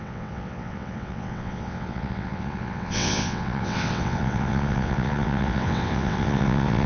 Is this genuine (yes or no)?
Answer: no